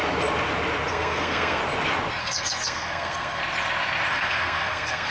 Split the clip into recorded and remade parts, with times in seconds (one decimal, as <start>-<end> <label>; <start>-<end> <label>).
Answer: 0.0-0.9 recorded; 0.9-1.6 remade; 1.6-2.2 recorded; 2.2-3.4 remade; 3.4-4.1 recorded; 4.1-5.1 remade